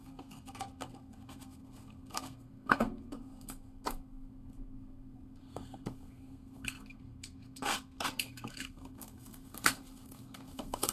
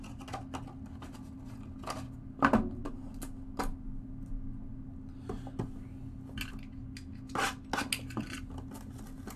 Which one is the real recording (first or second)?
second